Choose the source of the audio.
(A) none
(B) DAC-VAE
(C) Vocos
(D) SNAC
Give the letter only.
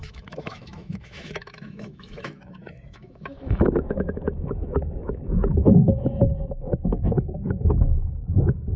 B